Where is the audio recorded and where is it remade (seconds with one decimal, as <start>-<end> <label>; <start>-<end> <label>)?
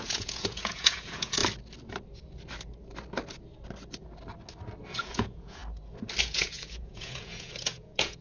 0.0-1.4 remade; 1.4-4.9 recorded; 4.9-5.6 remade; 5.6-6.2 recorded; 6.2-8.2 remade